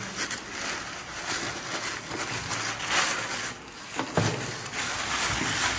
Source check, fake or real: real